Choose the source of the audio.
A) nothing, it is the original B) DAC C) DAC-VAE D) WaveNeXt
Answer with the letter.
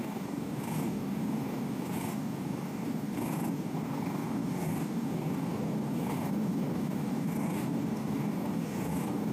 B